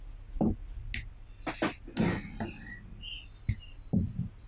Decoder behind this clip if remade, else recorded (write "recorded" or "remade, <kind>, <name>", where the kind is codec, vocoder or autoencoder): recorded